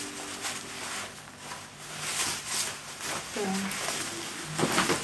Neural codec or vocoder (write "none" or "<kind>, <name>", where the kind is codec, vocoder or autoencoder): none